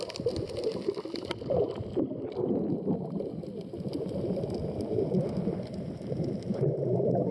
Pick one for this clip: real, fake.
real